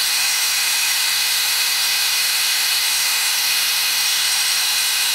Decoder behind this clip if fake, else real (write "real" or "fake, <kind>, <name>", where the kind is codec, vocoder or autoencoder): fake, autoencoder, DAC-VAE